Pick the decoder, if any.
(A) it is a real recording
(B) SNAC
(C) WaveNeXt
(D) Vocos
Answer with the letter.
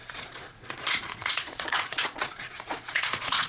D